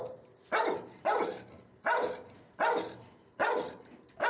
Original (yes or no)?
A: yes